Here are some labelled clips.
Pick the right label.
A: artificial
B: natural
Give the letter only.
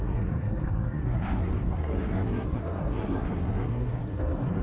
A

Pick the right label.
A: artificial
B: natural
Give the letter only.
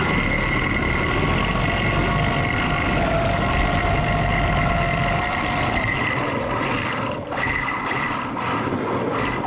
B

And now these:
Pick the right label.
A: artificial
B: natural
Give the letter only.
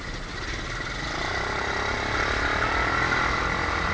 B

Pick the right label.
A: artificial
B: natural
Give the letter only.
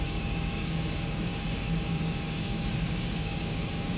A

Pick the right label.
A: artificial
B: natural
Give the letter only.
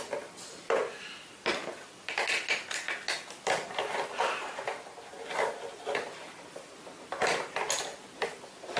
B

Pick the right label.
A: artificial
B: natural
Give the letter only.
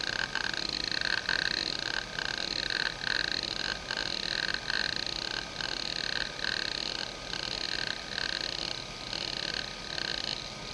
A